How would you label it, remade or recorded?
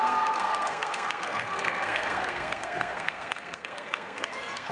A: remade